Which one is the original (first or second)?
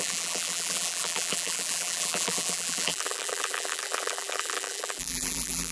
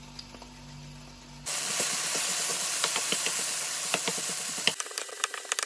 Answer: second